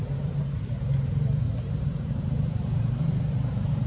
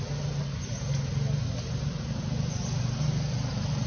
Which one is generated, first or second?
first